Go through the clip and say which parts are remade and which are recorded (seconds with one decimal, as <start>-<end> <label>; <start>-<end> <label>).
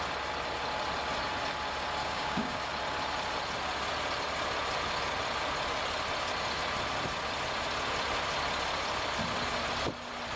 0.0-2.0 recorded; 2.0-2.6 remade; 2.6-10.4 recorded